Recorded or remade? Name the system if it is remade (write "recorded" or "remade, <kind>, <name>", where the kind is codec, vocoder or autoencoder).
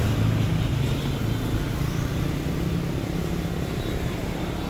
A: recorded